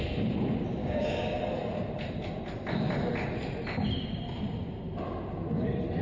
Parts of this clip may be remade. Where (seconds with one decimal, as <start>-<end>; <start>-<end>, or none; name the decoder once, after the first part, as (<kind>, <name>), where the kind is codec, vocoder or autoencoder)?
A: 0.8-1.4 (codec, DAC)